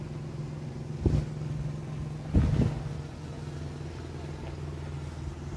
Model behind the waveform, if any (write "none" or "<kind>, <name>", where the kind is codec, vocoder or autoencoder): none